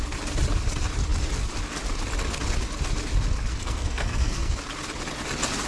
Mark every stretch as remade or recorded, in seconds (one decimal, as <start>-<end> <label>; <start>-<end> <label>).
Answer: 0.0-3.5 recorded; 3.5-4.6 remade; 4.6-5.7 recorded

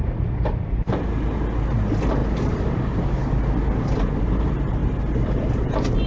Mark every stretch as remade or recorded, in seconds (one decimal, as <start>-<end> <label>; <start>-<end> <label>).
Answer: 0.0-6.1 recorded

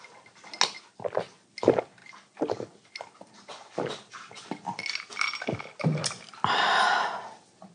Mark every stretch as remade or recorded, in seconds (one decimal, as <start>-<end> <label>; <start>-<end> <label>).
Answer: 0.0-7.7 recorded